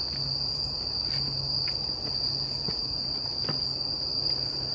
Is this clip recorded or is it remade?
recorded